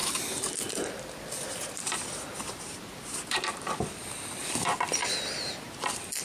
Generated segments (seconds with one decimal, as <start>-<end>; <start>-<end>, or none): 0.0-5.0; 5.7-6.2